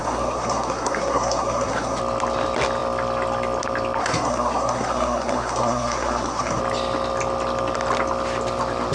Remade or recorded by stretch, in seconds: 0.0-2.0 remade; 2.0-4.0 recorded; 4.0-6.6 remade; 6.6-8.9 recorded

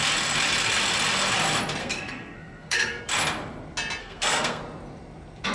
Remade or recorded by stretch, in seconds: 0.0-1.8 recorded; 1.8-3.0 remade; 3.0-4.0 recorded; 4.0-4.6 remade; 4.6-5.5 recorded

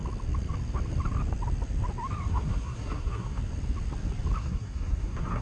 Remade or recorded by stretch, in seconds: 0.0-2.3 recorded; 2.3-3.4 remade; 3.4-4.4 recorded; 4.4-5.4 remade

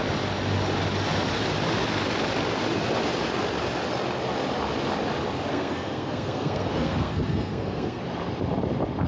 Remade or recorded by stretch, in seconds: 0.0-5.5 recorded; 5.5-8.0 remade; 8.0-9.1 recorded